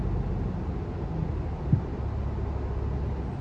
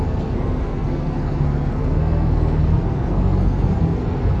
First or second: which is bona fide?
first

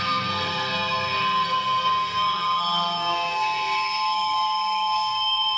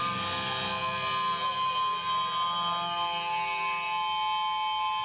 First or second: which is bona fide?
second